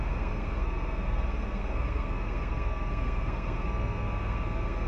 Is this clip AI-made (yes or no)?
yes